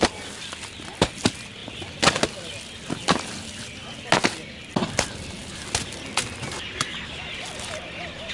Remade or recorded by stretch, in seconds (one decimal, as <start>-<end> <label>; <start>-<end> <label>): 0.0-8.3 recorded